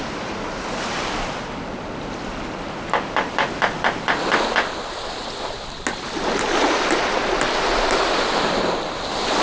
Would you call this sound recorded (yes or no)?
yes